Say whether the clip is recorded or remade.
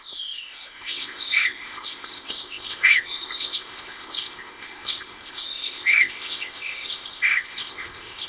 remade